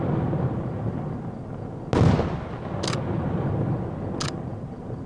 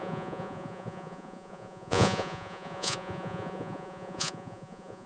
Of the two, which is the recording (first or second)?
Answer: first